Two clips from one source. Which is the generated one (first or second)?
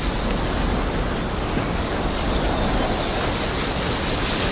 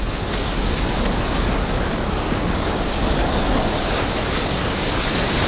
second